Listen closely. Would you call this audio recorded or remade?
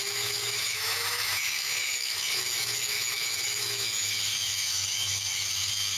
remade